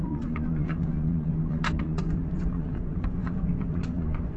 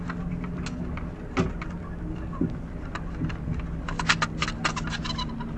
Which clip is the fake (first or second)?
first